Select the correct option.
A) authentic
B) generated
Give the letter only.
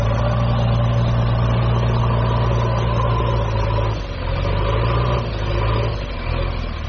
A